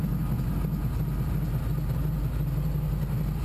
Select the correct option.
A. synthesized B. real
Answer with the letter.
B